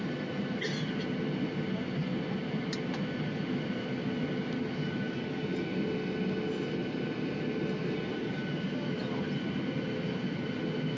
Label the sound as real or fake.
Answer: real